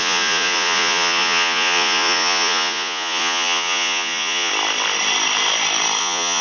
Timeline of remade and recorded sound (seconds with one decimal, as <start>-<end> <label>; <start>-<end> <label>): 0.0-4.5 remade; 4.5-6.0 recorded; 6.0-6.4 remade